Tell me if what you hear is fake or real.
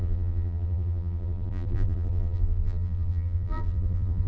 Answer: fake